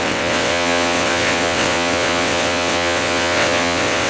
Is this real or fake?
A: fake